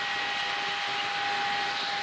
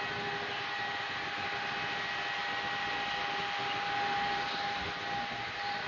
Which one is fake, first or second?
second